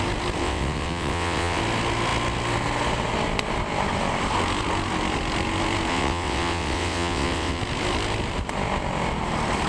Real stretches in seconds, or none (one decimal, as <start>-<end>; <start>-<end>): 0.0-0.4; 1.6-5.9; 7.6-9.7